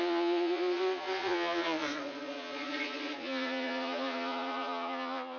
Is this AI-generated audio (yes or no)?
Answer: yes